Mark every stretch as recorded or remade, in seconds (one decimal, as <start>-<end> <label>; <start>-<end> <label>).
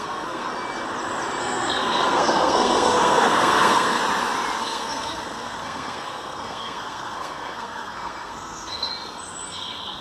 0.0-0.5 remade; 0.5-1.4 recorded; 1.4-4.0 remade; 4.0-4.6 recorded; 4.6-8.9 remade; 8.9-9.5 recorded; 9.5-10.0 remade